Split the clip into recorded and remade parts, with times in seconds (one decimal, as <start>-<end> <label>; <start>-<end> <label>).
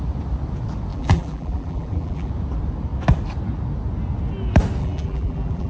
0.0-0.9 recorded; 0.9-2.3 remade; 2.3-4.8 recorded; 4.8-5.7 remade